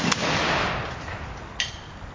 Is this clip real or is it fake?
real